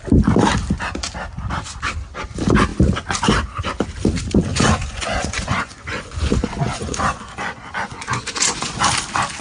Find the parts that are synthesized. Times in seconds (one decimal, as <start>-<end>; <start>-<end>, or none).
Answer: 4.5-8.8